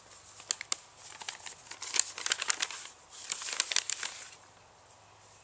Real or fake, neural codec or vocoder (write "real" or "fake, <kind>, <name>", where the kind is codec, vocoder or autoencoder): real